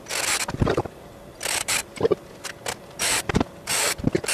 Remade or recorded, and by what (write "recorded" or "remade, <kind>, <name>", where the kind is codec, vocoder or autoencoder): recorded